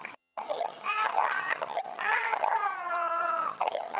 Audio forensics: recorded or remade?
remade